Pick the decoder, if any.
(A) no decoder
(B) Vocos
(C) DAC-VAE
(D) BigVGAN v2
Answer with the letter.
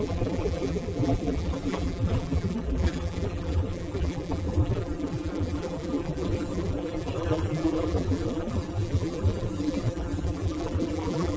D